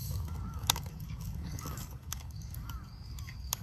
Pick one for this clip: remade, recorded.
remade